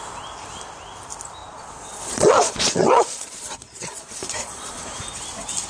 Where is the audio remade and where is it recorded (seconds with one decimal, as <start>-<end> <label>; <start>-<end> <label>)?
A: 0.0-1.4 recorded; 1.4-4.8 remade; 4.8-5.7 recorded